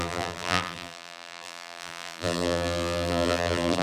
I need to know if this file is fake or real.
fake